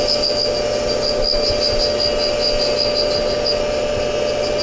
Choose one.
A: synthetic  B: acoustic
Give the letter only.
B